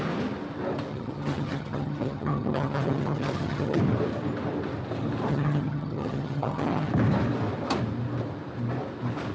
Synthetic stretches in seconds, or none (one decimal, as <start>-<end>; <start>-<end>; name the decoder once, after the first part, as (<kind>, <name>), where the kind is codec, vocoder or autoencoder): 0.9-3.8 (vocoder, HiFi-GAN); 5.3-6.9

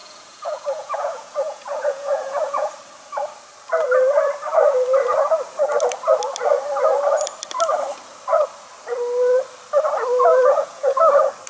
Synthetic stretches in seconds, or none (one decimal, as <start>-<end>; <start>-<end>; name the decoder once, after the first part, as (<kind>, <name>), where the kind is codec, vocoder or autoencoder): 0.0-2.7 (vocoder, Vocos); 10.3-11.0

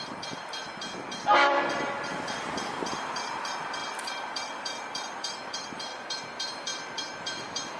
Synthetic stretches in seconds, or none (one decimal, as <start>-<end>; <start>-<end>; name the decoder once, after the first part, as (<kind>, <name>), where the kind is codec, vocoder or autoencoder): 0.0-7.8 (vocoder, BigVGAN v2)